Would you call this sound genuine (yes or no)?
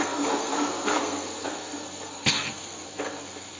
no